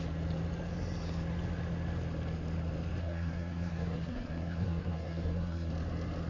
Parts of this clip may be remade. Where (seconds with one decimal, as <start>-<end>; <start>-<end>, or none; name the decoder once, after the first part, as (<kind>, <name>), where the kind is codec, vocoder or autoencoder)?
3.0-5.7 (codec, SNAC)